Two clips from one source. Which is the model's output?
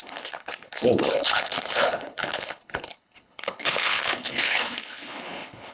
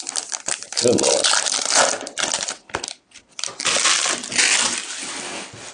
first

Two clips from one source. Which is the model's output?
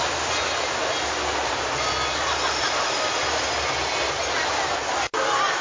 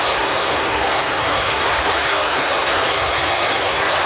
second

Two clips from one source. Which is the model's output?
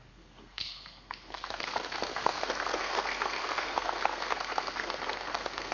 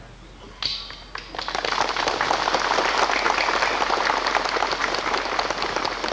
first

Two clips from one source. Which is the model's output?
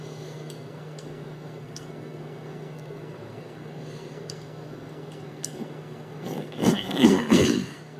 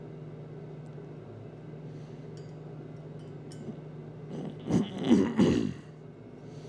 first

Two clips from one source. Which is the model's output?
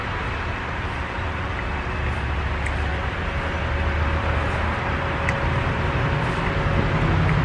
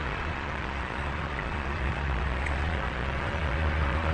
second